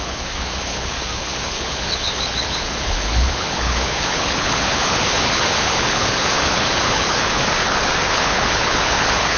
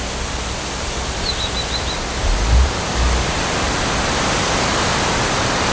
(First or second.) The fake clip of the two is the first